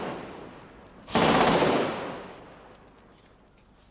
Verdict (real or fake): real